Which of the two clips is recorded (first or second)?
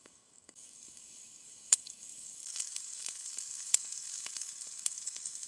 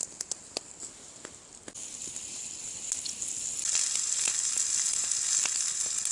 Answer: second